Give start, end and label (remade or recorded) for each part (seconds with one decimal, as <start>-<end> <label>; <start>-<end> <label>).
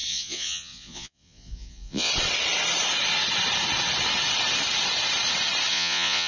0.0-2.1 remade; 2.1-5.7 recorded; 5.7-6.3 remade